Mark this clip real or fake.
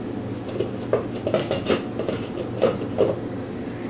real